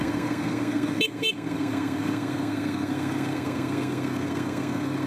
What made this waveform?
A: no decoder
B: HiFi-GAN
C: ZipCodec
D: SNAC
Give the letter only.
D